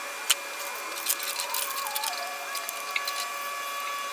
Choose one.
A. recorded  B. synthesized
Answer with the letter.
A